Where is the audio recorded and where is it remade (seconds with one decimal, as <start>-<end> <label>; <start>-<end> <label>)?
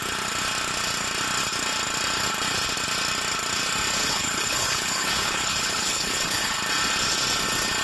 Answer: 0.0-4.0 recorded; 4.0-6.6 remade; 6.6-7.8 recorded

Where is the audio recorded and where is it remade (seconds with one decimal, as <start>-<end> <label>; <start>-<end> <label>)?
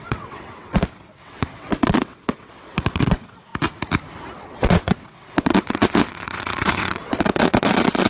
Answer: 0.0-3.5 remade; 3.5-4.4 recorded; 4.4-8.1 remade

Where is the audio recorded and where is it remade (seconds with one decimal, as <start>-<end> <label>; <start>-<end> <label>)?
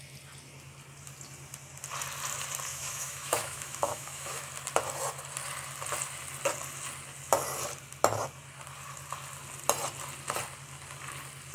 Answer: 0.0-2.7 recorded; 2.7-4.5 remade; 4.5-11.5 recorded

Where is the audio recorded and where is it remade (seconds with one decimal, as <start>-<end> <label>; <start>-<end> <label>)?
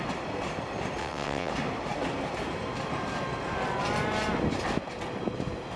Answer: 0.0-1.0 recorded; 1.0-1.5 remade; 1.5-5.8 recorded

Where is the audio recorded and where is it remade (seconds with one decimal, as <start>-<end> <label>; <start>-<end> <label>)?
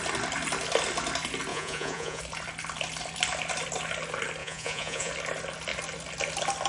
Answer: 0.0-1.5 recorded; 1.5-2.2 remade; 2.2-4.4 recorded; 4.4-5.1 remade; 5.1-6.7 recorded